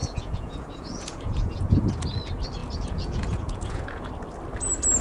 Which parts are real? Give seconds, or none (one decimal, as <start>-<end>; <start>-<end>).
1.9-2.6; 4.1-5.0